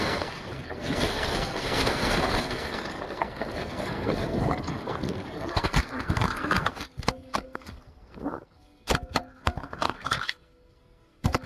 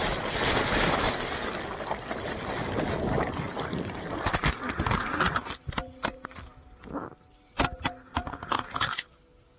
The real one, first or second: second